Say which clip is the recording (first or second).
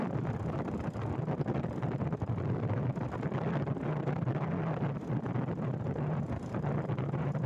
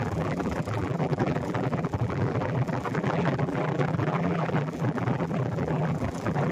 first